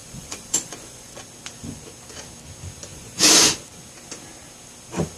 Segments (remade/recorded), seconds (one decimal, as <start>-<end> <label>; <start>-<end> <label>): 0.0-1.2 remade; 1.2-2.9 recorded; 2.9-3.6 remade; 3.6-5.2 recorded